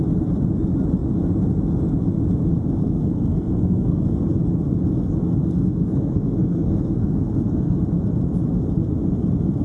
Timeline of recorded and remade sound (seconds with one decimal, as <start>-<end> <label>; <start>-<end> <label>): 0.0-2.8 recorded; 2.8-4.2 remade; 4.2-5.4 recorded; 5.4-7.8 remade; 7.8-9.6 recorded